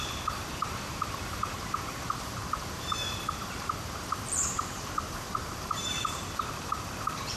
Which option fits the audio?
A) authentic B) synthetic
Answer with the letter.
B